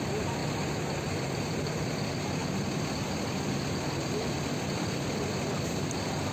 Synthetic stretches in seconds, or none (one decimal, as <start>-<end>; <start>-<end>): 0.0-0.4; 1.1-6.3